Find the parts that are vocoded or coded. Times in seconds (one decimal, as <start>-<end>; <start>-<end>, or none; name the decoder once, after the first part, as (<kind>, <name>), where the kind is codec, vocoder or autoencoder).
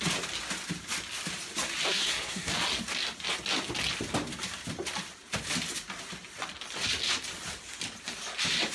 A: 1.9-2.5 (codec, SNAC)